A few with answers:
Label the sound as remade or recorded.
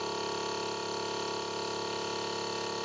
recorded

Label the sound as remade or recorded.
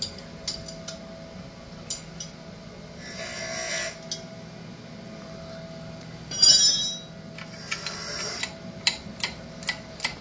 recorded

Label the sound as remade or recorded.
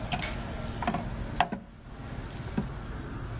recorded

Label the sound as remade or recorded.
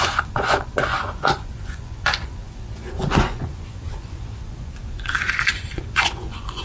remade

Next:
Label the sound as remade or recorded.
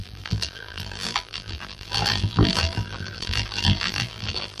remade